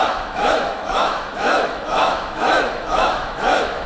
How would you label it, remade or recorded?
remade